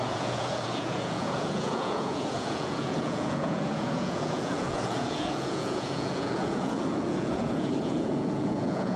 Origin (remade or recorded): remade